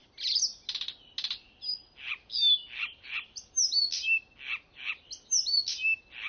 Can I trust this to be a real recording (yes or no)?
yes